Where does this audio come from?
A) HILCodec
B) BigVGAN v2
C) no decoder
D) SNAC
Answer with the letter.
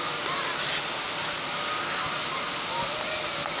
C